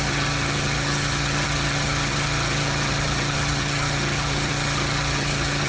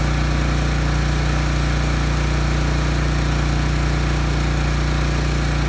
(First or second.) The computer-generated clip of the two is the first